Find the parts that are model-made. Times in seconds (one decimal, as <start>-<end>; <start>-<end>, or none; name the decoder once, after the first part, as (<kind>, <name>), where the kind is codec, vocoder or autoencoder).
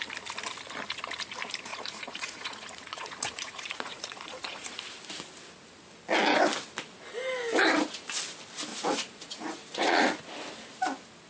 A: 1.7-4.8 (vocoder, Vocos); 8.7-10.2